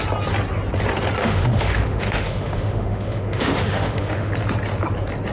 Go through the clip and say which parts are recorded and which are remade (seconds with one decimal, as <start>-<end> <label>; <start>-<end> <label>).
0.0-1.2 recorded; 1.2-4.3 remade; 4.3-5.3 recorded